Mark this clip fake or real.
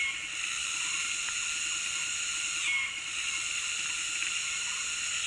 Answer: real